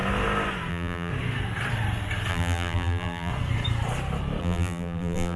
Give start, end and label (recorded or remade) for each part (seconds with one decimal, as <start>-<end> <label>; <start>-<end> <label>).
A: 0.0-0.7 recorded; 0.7-1.1 remade; 1.1-2.3 recorded; 2.3-3.3 remade; 3.3-4.4 recorded; 4.4-5.4 remade